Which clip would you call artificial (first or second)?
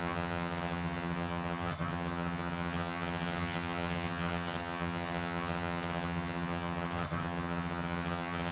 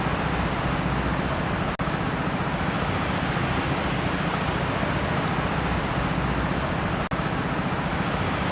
first